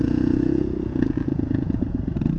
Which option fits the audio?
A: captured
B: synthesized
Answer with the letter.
B